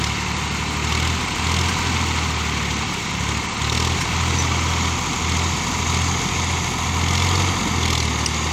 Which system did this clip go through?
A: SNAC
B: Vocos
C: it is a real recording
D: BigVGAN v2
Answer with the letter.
C